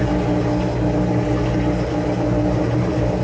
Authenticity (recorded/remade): recorded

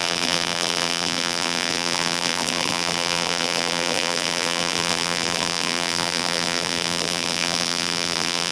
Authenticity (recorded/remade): remade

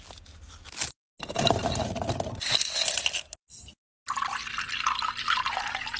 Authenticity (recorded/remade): recorded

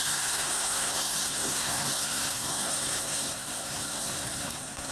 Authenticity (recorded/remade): remade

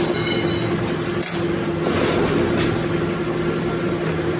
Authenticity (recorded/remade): recorded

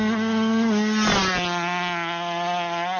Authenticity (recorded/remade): recorded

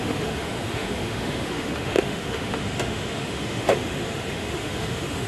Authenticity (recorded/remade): remade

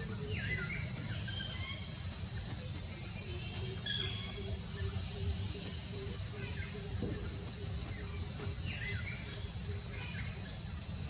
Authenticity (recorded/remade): recorded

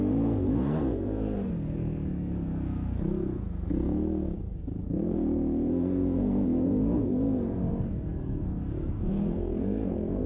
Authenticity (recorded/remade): remade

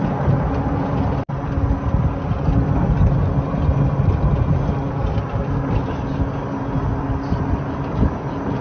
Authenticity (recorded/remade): recorded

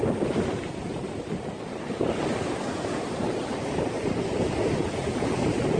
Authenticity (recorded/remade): recorded